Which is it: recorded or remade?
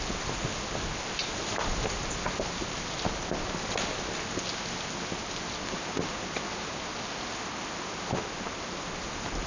recorded